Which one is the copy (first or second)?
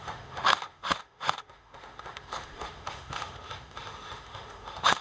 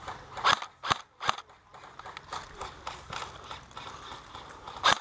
first